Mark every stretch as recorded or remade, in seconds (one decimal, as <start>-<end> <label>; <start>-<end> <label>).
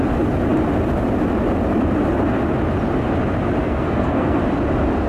0.0-3.6 recorded; 3.6-4.4 remade; 4.4-5.1 recorded